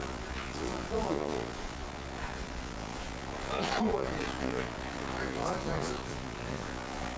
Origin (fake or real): fake